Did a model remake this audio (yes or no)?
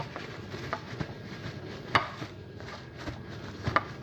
no